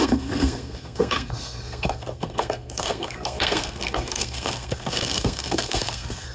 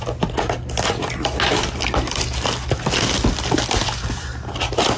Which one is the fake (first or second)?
first